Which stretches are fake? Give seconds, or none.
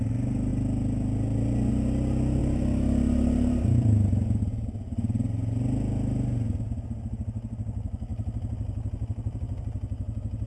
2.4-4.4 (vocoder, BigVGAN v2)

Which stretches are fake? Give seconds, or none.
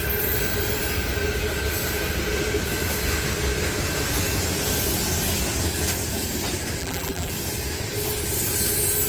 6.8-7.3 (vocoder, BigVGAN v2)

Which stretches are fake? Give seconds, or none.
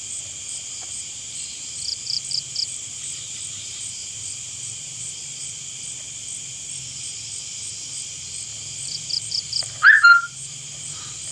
0.0-6.2 (vocoder, BigVGAN v2); 6.8-11.3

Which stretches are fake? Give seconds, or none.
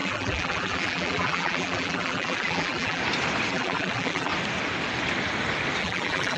0.0-3.0 (vocoder, BigVGAN v2); 3.5-4.3; 5.8-6.4